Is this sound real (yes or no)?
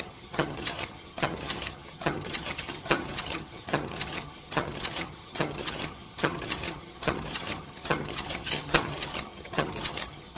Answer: no